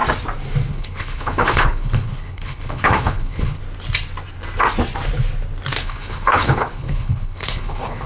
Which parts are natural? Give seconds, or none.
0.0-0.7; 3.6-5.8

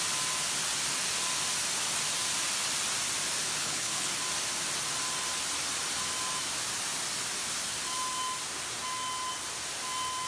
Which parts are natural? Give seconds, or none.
0.0-3.6; 4.1-10.3

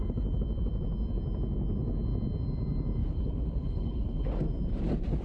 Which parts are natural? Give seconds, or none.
0.0-3.0; 4.3-5.2

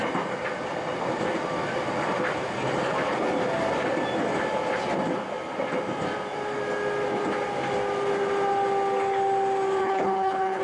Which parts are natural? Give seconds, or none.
0.0-9.8

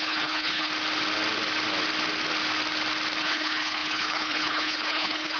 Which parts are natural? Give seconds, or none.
0.7-3.2

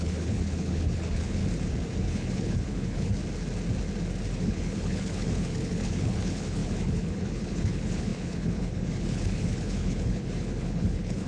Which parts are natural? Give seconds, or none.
1.4-2.0; 3.2-4.4

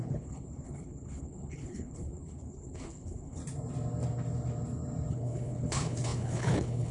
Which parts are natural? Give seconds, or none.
3.4-5.1